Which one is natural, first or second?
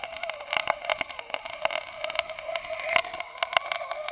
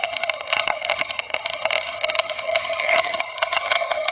first